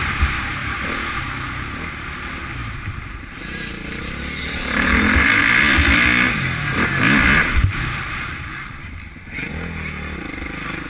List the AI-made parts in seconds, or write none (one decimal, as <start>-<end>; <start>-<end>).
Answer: 0.6-1.1; 2.6-5.4; 7.5-9.5